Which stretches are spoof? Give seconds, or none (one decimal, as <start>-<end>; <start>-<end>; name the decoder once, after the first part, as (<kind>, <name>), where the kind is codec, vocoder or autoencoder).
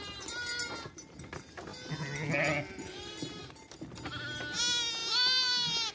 none